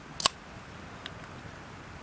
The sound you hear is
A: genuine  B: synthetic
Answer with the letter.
A